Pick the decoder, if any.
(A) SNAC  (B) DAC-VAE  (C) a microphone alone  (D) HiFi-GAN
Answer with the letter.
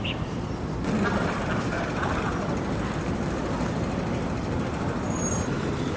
C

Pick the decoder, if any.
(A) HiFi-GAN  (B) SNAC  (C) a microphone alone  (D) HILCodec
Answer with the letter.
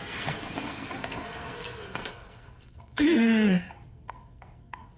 B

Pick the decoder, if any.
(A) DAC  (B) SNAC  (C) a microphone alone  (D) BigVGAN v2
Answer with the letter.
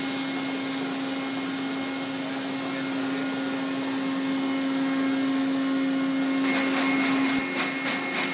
C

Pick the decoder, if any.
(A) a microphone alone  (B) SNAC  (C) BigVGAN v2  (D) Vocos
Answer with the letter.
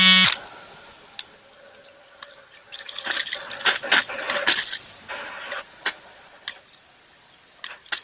A